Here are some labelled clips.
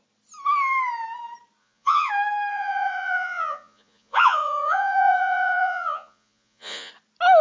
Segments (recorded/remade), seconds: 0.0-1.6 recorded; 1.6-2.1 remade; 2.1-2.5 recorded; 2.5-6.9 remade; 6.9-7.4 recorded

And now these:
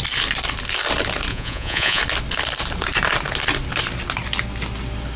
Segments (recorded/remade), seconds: 0.0-1.3 recorded; 1.3-2.0 remade; 2.0-5.2 recorded